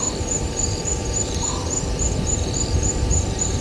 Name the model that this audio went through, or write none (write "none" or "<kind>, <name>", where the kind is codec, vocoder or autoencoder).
vocoder, BigVGAN v2